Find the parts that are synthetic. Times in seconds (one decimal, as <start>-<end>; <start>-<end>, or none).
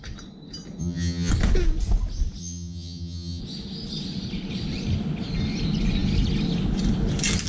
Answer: 0.8-1.3; 2.4-3.4